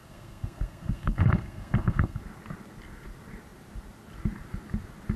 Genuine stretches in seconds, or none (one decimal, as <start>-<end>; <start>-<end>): 2.2-5.2